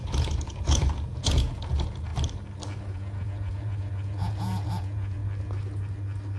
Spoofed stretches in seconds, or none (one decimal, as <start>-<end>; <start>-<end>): 0.0-2.1; 2.8-5.2